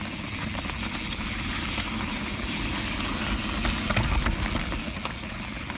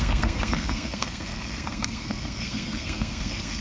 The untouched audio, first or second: first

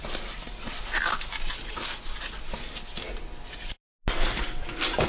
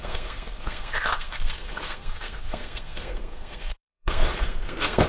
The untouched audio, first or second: first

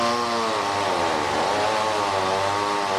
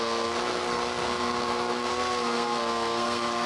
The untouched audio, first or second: first